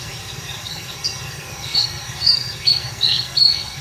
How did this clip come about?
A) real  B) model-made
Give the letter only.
B